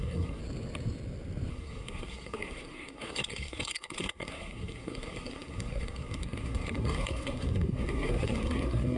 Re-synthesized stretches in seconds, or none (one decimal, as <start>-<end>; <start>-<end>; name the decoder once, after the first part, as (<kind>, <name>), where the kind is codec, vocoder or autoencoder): 0.0-0.4 (codec, SNAC); 1.5-9.0